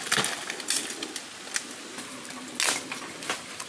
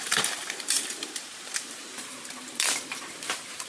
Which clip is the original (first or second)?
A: first